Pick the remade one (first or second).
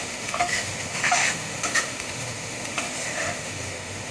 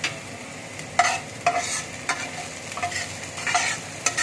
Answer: first